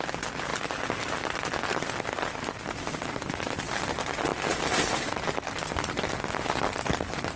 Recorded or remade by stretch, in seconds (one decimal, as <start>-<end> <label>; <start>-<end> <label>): 0.0-7.4 recorded